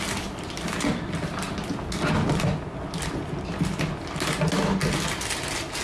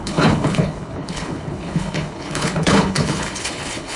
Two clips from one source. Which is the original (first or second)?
first